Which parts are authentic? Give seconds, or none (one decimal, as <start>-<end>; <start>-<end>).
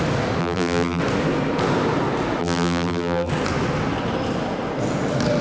0.0-0.4; 1.0-2.4; 3.3-5.4